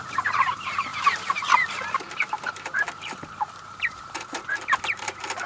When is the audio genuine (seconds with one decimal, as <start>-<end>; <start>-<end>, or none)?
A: none